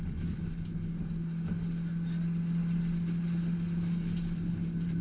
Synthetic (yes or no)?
no